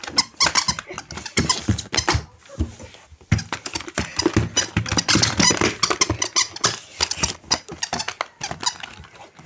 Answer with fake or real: real